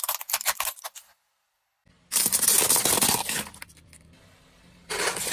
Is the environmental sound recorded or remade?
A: recorded